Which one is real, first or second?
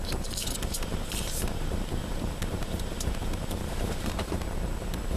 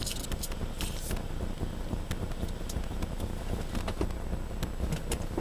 second